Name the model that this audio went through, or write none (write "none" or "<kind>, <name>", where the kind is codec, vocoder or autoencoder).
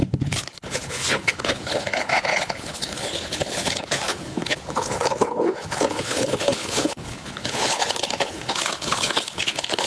codec, HILCodec